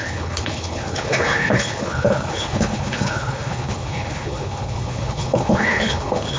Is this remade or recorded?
remade